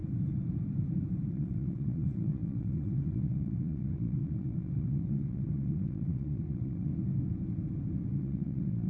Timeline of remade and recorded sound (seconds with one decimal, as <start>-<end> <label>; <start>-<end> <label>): 0.0-1.3 recorded; 1.3-6.9 remade; 6.9-8.2 recorded; 8.2-8.9 remade

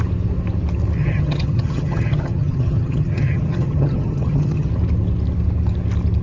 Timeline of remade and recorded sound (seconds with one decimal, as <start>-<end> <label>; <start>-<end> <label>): 0.0-1.0 recorded; 1.0-4.7 remade; 4.7-6.2 recorded

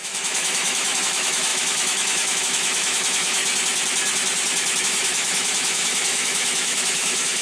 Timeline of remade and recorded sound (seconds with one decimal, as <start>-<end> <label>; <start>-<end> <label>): 0.0-3.4 remade; 3.4-4.8 recorded; 4.8-7.4 remade